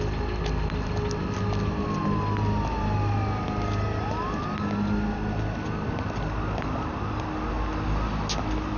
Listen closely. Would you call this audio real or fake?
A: real